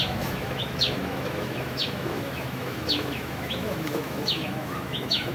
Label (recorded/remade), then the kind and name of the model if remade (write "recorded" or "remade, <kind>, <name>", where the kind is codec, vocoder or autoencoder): remade, autoencoder, DAC-VAE